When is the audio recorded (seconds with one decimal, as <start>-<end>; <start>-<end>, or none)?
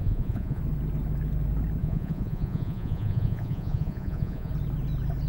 0.6-1.8; 4.5-5.3